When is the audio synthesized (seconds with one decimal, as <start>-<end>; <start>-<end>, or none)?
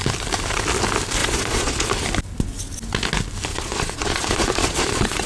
1.2-1.9; 3.5-5.3